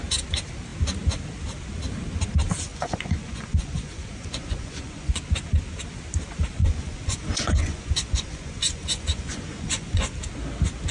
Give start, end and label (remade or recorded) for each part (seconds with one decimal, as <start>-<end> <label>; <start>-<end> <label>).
0.0-2.7 recorded; 2.7-5.2 remade; 5.2-6.6 recorded; 6.6-10.1 remade; 10.1-10.9 recorded